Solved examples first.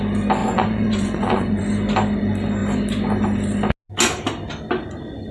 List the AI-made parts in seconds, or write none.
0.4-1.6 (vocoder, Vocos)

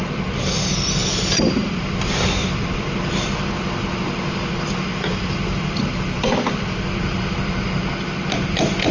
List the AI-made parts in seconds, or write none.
none

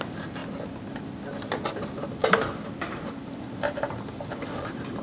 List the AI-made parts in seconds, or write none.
2.2-5.0 (vocoder, BigVGAN v2)

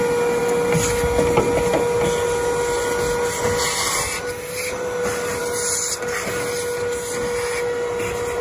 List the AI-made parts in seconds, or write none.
none

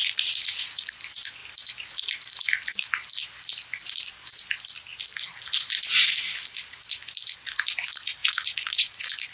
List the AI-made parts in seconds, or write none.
0.0-0.9 (vocoder, Vocos); 8.2-9.3

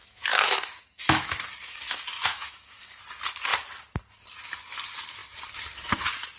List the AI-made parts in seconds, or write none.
0.0-3.0 (autoencoder, DAC-VAE)

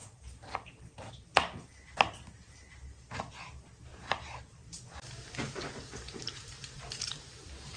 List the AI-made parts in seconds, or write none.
0.0-0.9 (vocoder, BigVGAN v2); 3.9-7.8

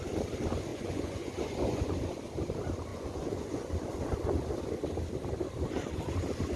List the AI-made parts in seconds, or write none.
0.7-1.8 (vocoder, Vocos); 2.9-3.7